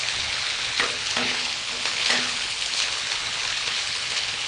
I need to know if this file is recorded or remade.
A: remade